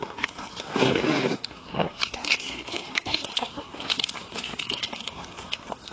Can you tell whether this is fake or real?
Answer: fake